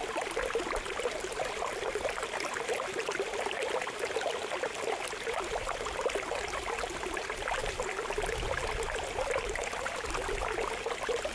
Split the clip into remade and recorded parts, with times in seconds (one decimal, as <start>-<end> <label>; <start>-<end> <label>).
0.0-11.3 recorded